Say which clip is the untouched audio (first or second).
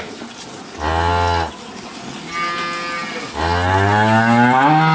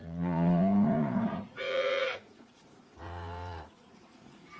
first